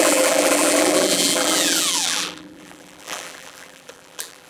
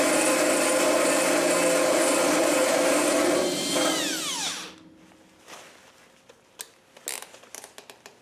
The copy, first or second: first